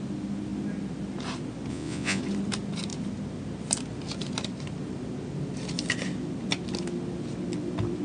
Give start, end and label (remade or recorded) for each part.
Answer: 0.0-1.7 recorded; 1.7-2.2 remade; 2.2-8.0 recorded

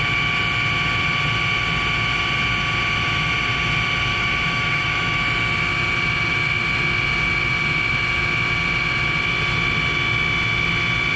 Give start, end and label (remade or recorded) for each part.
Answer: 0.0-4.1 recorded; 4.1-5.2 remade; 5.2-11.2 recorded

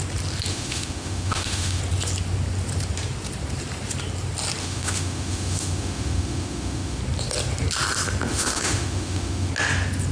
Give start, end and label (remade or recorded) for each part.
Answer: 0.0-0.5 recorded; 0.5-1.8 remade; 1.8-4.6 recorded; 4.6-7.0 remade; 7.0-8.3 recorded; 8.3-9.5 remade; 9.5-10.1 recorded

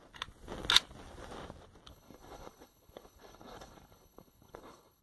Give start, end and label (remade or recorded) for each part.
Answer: 0.0-1.9 recorded; 1.9-5.0 remade